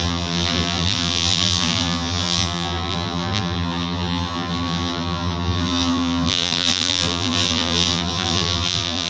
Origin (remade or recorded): remade